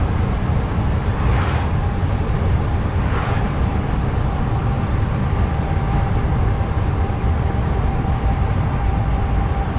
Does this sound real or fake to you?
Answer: fake